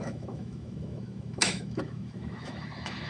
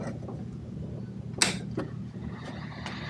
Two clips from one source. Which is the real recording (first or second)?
second